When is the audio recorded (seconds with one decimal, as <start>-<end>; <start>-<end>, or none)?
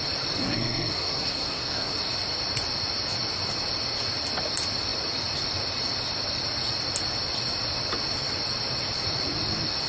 0.0-0.4; 1.9-9.9